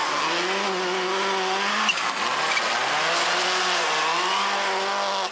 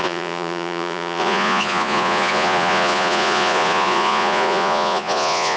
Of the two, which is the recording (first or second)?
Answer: first